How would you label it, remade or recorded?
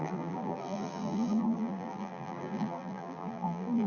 remade